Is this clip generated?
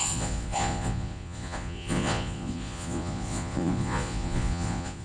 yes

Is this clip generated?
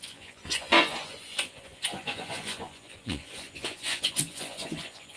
yes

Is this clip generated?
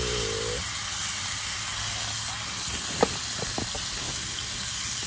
no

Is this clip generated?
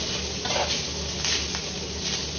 no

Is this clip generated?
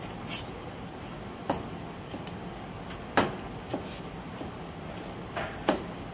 no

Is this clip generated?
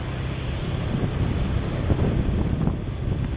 yes